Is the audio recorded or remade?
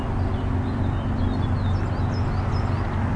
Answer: recorded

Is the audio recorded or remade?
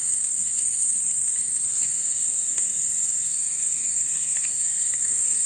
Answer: remade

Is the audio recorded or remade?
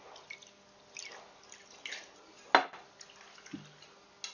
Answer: recorded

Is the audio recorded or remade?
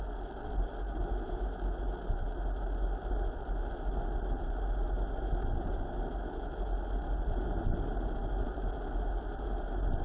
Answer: recorded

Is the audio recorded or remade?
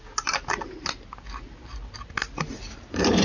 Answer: recorded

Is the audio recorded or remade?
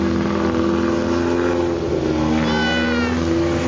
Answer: recorded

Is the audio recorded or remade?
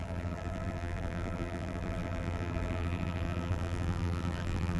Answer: remade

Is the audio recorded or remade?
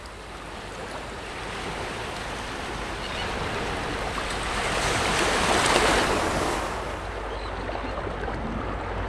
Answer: remade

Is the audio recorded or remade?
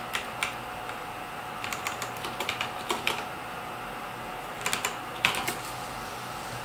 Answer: recorded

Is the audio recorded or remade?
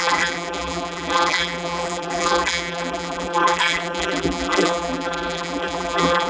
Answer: remade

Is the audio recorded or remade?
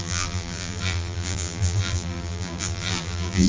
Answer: remade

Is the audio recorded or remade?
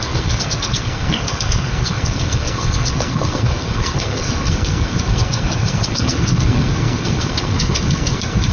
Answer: remade